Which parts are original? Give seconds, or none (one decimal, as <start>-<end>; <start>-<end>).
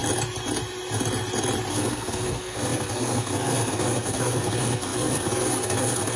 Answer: 0.0-1.7